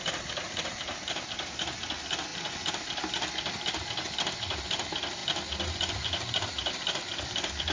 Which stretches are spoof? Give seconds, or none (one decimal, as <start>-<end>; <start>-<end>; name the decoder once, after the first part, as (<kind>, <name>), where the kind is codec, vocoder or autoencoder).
none